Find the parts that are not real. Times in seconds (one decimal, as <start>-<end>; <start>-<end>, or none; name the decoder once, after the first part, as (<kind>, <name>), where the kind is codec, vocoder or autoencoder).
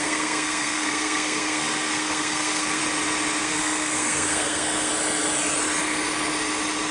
0.0-2.8 (codec, SNAC); 3.4-4.9